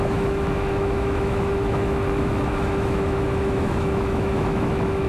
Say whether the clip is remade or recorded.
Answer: remade